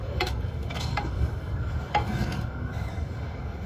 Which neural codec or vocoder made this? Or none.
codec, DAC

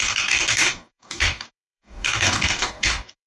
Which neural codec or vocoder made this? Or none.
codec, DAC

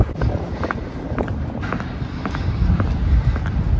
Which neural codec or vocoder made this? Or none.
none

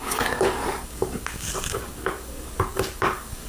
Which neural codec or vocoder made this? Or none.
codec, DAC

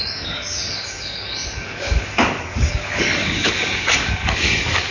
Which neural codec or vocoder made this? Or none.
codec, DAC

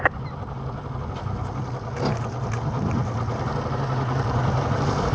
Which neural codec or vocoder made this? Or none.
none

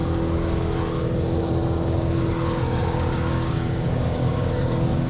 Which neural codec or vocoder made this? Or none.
codec, DAC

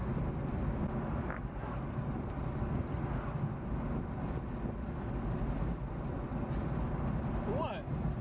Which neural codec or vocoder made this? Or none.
none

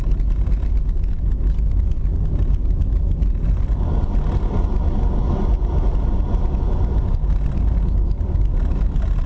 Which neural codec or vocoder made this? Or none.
none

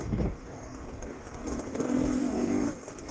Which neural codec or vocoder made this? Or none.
codec, DAC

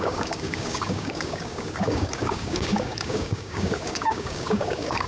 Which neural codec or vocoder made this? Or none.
codec, DAC